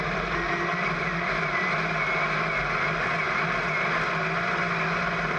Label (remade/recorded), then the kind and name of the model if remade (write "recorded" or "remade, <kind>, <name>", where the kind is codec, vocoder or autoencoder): recorded